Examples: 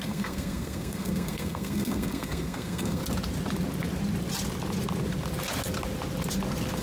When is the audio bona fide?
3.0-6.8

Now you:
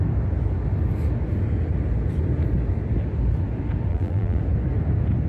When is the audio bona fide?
0.0-3.9; 4.4-5.3

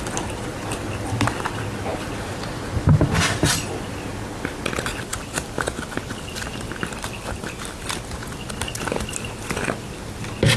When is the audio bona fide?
0.0-10.6

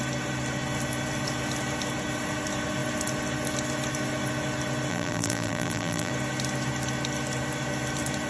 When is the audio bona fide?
0.0-4.9; 6.1-8.3

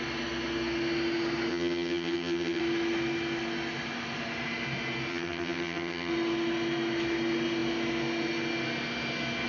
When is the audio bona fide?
0.0-1.5; 2.6-5.1; 6.1-9.5

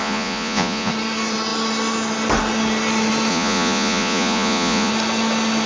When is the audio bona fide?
0.9-3.3; 4.9-5.7

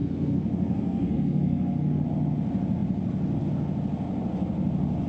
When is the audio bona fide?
2.0-5.1